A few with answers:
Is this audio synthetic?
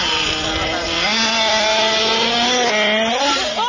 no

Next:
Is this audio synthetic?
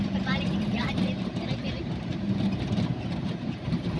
yes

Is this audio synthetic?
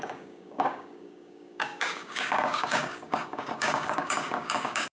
yes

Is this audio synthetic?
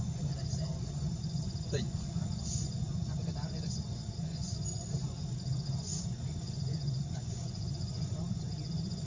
yes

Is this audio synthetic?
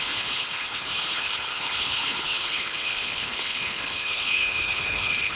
yes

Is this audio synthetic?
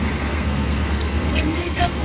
yes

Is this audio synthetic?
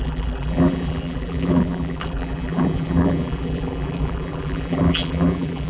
yes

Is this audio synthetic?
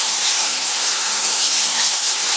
yes